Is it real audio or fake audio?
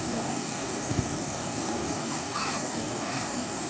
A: fake